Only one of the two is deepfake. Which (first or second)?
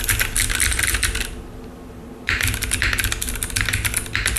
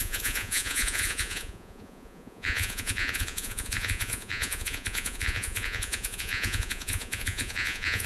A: second